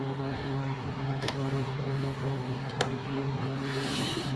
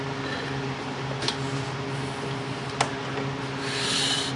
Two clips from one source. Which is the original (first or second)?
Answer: second